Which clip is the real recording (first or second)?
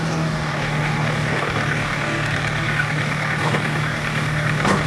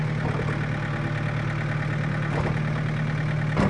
second